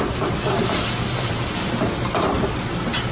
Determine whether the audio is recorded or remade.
recorded